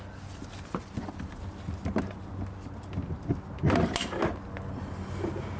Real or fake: real